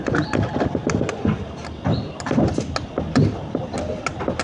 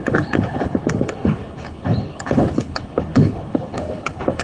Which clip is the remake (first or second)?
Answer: second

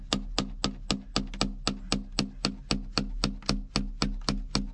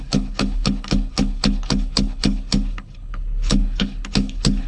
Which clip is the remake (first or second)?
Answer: second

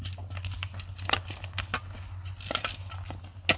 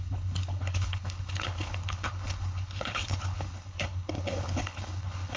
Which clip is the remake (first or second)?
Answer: second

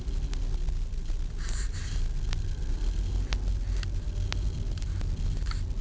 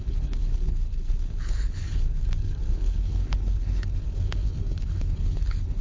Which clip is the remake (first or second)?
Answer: second